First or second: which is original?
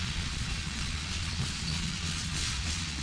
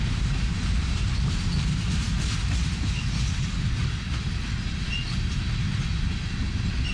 second